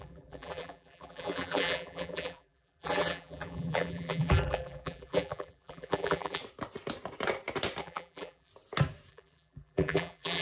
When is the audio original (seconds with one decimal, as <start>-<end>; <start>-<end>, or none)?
6.4-7.8; 8.5-9.1